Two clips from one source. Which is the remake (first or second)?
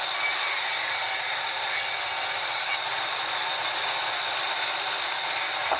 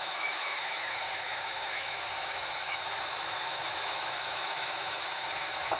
second